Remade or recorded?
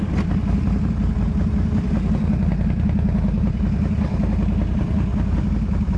recorded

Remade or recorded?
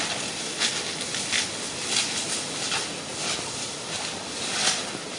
recorded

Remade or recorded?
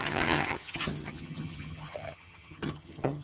remade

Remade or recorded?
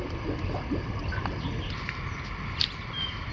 recorded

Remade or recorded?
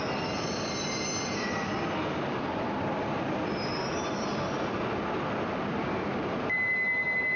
recorded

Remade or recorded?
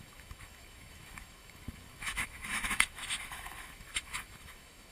remade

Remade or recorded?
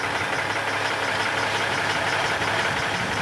recorded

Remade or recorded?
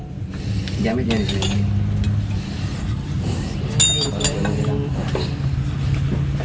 recorded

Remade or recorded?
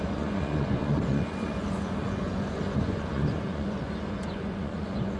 remade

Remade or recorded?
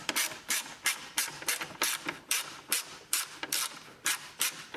remade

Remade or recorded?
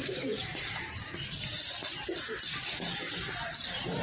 remade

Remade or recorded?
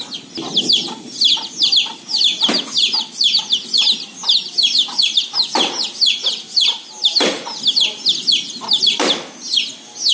recorded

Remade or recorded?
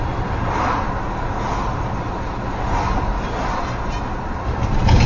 recorded